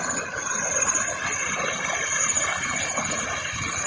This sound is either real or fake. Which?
real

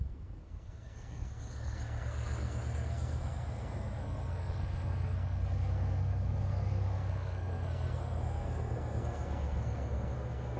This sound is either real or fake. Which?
fake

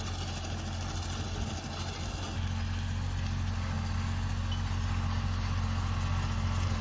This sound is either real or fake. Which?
real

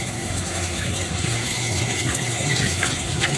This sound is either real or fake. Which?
fake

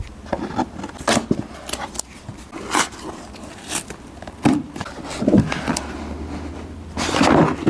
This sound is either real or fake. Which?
real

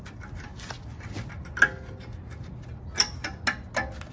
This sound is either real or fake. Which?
real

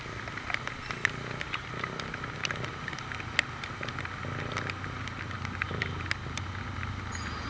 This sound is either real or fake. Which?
real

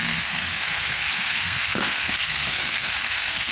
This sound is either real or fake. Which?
fake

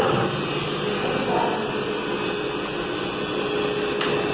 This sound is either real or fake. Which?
real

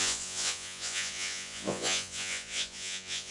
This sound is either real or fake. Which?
fake